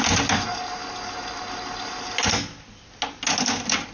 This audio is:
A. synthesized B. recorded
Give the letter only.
B